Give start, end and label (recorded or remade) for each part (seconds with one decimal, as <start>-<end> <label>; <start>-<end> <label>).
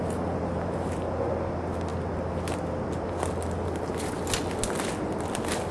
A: 0.0-5.7 recorded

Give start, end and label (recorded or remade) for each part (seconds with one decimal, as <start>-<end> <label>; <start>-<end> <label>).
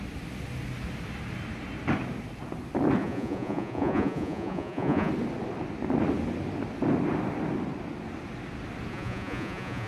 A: 0.0-3.0 recorded; 3.0-5.1 remade; 5.1-8.9 recorded; 8.9-9.9 remade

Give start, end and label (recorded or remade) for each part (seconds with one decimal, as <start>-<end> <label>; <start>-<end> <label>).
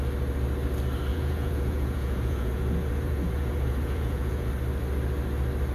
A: 0.0-1.1 recorded; 1.1-4.5 remade; 4.5-5.7 recorded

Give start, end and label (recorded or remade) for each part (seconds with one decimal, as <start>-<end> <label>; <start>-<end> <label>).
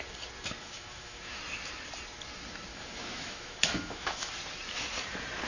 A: 0.0-0.6 recorded; 0.6-1.4 remade; 1.4-2.7 recorded; 2.7-4.3 remade; 4.3-5.5 recorded